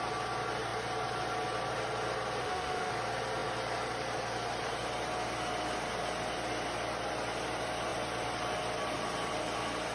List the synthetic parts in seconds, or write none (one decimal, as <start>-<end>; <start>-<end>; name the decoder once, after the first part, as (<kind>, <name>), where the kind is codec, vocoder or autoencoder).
2.4-2.9 (autoencoder, DAC-VAE)